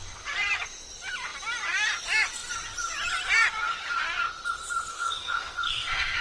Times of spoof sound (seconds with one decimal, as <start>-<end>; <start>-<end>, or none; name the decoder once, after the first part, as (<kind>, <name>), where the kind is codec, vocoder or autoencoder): 4.9-6.2 (codec, SNAC)